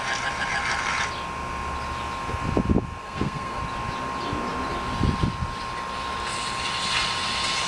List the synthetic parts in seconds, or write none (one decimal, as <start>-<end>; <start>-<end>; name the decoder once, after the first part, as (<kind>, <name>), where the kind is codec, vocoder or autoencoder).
3.0-3.6 (codec, SNAC)